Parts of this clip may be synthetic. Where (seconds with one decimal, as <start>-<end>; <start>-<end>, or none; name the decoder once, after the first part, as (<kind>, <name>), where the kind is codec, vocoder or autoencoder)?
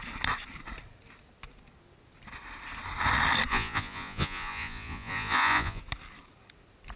3.5-5.8 (vocoder, Vocos)